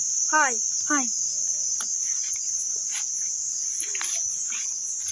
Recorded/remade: recorded